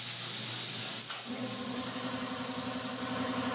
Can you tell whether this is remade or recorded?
recorded